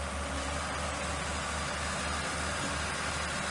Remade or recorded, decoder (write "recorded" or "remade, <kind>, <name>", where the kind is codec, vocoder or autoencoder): recorded